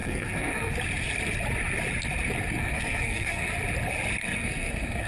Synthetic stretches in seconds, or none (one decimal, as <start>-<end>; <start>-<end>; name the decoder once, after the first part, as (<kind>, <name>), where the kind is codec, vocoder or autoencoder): 0.0-0.7 (codec, SNAC); 2.6-3.5; 4.2-5.1